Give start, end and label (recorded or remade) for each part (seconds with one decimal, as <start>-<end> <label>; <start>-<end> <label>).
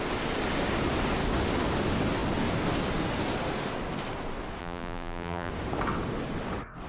0.0-4.6 recorded; 4.6-5.5 remade; 5.5-6.9 recorded